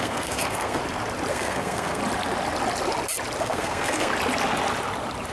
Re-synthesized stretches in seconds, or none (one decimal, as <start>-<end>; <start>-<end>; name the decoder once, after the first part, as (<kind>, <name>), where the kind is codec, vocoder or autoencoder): 0.0-0.8 (codec, SNAC); 1.3-2.0; 3.4-4.1